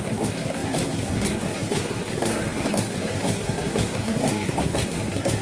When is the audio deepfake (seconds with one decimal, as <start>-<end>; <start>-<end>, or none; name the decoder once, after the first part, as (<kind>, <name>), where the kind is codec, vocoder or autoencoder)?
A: 0.0-5.4 (codec, SNAC)